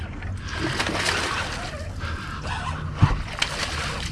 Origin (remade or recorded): recorded